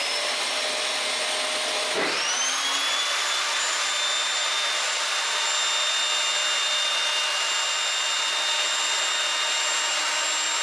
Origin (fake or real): real